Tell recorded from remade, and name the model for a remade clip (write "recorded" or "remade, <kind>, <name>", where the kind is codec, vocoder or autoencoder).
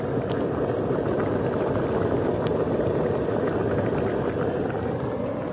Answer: recorded